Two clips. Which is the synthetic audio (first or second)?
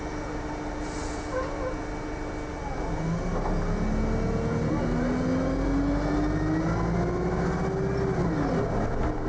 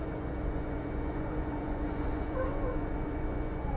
second